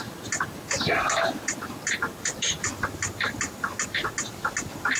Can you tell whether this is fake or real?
real